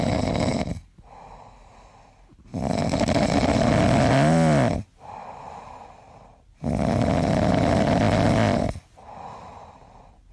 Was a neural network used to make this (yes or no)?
no